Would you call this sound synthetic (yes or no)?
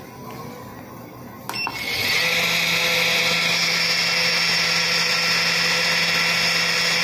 no